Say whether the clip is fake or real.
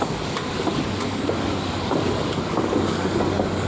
fake